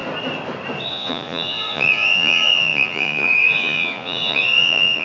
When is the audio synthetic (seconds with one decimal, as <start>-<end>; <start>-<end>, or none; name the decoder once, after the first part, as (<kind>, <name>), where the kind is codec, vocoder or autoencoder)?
0.9-5.0 (vocoder, Vocos)